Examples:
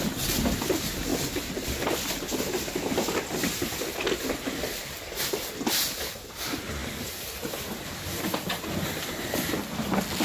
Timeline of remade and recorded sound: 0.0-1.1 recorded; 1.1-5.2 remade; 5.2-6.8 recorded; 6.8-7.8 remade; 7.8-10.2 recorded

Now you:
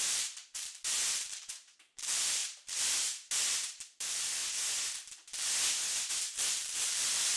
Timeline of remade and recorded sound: 0.0-4.4 remade; 4.4-6.1 recorded; 6.1-7.4 remade